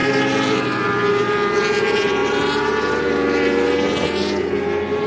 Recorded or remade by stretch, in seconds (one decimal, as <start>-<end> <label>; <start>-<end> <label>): 0.0-5.1 recorded